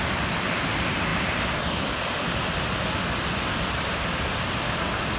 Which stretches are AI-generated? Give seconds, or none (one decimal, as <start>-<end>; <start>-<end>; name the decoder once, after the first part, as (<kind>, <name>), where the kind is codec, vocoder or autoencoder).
none